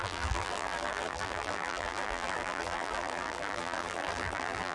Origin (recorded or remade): remade